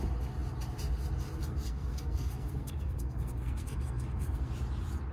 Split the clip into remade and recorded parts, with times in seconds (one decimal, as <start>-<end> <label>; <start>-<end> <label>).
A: 0.0-1.4 recorded; 1.4-4.5 remade; 4.5-5.1 recorded